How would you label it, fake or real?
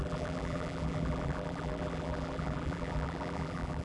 fake